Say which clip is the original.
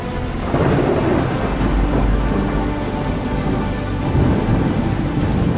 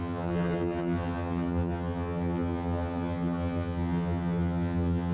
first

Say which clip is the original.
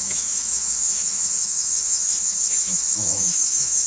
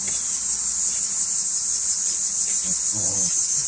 second